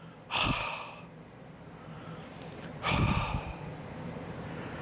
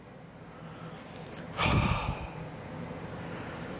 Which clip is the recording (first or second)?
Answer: second